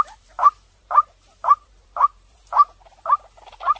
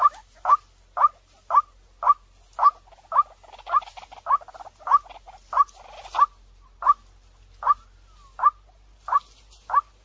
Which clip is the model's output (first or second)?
first